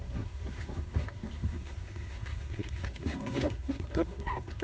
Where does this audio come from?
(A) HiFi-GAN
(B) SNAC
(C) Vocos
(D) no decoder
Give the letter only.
B